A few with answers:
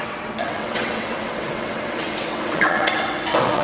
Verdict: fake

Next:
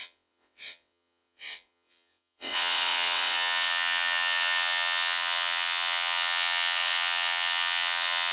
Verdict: fake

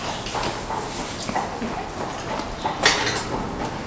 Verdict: real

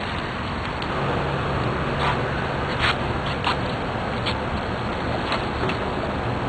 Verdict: real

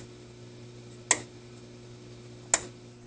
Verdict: real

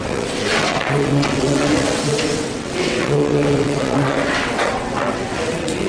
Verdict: fake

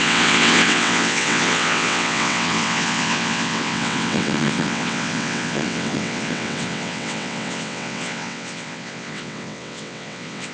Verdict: fake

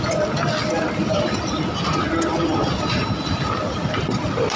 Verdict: real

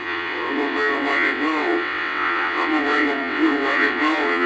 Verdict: fake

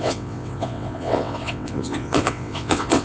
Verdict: fake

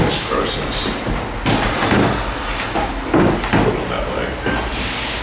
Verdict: real